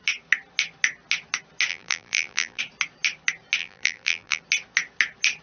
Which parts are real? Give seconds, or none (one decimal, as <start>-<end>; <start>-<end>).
0.0-1.7; 2.6-3.6; 4.4-5.4